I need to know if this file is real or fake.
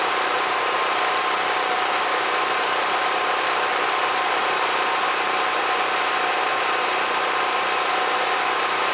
fake